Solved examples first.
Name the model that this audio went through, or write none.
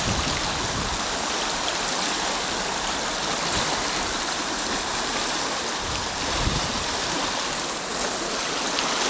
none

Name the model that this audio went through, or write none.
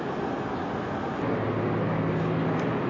none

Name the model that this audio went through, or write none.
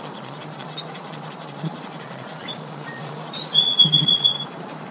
vocoder, Vocos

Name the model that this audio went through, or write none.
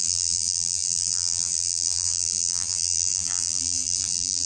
vocoder, BigVGAN v2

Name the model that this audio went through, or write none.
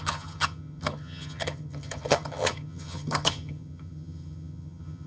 vocoder, HiFi-GAN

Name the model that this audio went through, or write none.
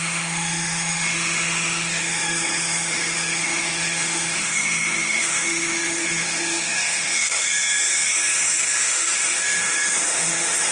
autoencoder, DAC-VAE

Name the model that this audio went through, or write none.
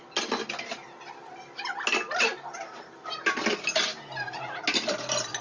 none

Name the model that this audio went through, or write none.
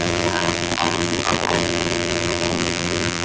vocoder, BigVGAN v2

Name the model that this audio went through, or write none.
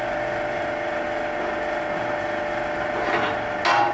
none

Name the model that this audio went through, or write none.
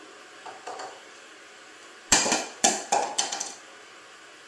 vocoder, BigVGAN v2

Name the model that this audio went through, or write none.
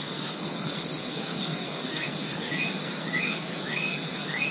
codec, SNAC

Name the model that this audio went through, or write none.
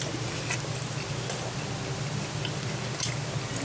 none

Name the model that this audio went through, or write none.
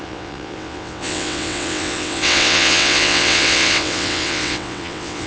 vocoder, WaveNeXt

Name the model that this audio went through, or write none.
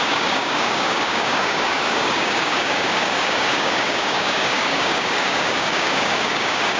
codec, DAC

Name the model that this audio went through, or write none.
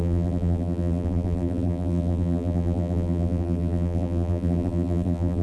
vocoder, BigVGAN v2